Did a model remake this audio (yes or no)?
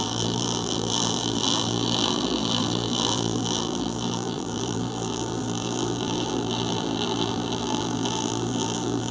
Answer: yes